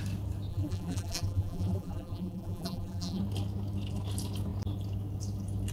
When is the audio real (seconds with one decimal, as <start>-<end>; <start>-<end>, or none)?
0.0-0.5; 3.2-5.7